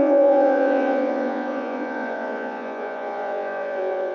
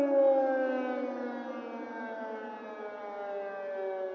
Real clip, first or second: second